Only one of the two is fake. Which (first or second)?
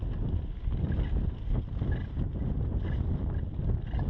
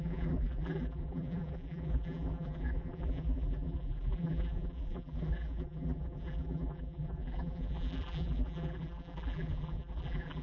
second